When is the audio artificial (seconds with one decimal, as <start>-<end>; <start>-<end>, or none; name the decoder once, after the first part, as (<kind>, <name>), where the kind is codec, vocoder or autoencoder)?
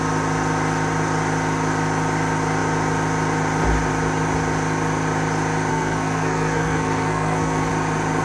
5.7-7.7 (codec, SNAC)